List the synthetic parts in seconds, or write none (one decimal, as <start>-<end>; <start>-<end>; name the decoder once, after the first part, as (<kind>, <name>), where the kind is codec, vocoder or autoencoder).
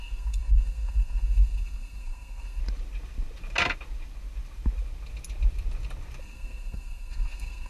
0.0-2.6 (codec, SNAC); 6.2-7.7